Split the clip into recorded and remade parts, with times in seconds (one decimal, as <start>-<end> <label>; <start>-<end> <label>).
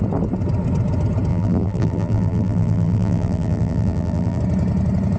0.0-1.3 recorded; 1.3-4.4 remade; 4.4-5.2 recorded